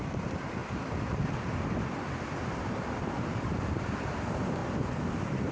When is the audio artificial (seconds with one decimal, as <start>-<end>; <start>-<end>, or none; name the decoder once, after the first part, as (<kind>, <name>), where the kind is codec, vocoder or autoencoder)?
0.0-4.6 (vocoder, BigVGAN v2); 5.1-5.5